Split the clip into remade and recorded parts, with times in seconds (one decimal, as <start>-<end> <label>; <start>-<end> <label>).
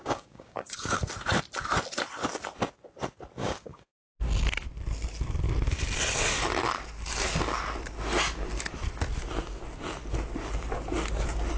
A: 0.0-1.0 remade; 1.0-3.4 recorded; 3.4-4.0 remade; 4.0-11.6 recorded